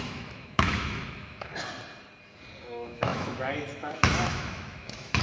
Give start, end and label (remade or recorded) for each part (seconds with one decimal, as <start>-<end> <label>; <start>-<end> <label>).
0.0-1.5 remade; 1.5-2.6 recorded; 2.6-5.2 remade